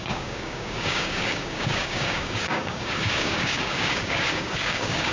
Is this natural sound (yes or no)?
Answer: no